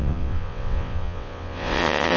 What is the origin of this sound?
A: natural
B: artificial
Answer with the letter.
B